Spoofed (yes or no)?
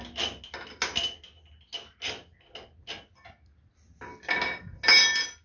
no